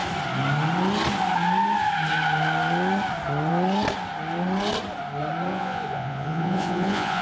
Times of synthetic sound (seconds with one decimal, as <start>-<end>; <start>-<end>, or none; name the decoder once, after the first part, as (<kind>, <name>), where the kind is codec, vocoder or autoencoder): 5.5-7.2 (vocoder, Vocos)